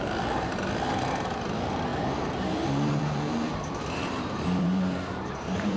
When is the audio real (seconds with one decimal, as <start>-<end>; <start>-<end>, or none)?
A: 0.0-1.9